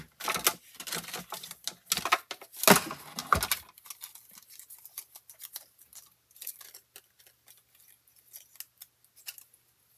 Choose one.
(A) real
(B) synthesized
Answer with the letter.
A